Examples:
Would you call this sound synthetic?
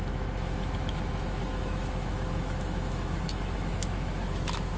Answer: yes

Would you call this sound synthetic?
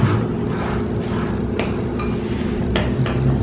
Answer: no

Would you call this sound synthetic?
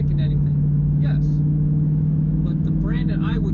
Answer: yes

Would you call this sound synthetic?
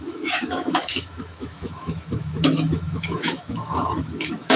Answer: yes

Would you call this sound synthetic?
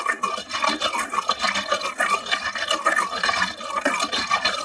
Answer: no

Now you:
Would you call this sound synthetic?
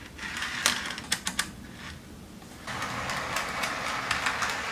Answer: no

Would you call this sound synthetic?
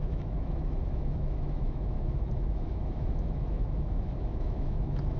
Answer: yes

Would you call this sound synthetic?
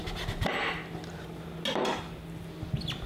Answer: no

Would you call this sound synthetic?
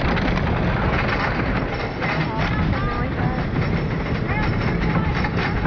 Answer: no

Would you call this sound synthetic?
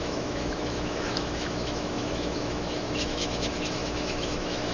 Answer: yes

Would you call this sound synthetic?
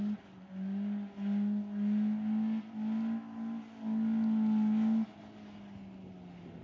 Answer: no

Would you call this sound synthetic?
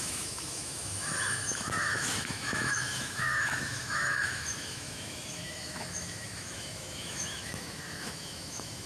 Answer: yes